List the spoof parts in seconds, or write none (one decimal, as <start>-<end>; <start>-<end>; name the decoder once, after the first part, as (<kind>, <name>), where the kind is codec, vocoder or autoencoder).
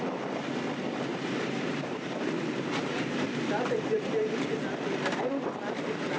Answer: 1.1-4.2 (vocoder, BigVGAN v2)